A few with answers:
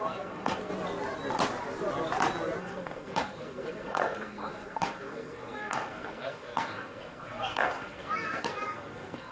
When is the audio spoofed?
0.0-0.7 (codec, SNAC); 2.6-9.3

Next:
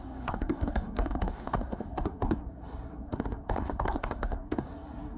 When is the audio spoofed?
0.0-5.2 (codec, SNAC)

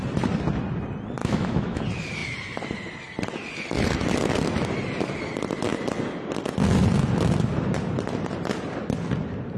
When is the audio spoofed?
1.2-1.8 (autoencoder, DAC-VAE)

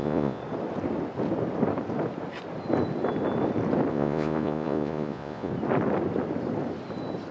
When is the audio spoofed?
0.0-0.4 (vocoder, Vocos); 3.9-5.5

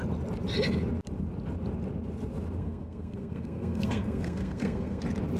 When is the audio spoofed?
2.6-5.0 (codec, SNAC)

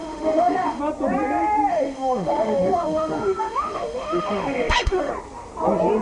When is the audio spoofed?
0.0-0.8 (autoencoder, DAC-VAE); 1.7-5.1

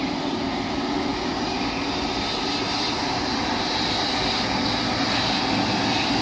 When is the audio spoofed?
none

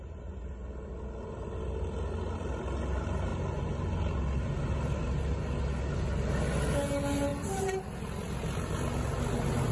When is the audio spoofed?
none